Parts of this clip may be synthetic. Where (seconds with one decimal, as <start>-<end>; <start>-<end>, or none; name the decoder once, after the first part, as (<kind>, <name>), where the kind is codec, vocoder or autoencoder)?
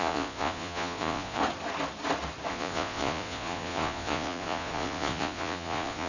0.0-1.4 (vocoder, Vocos); 2.5-6.1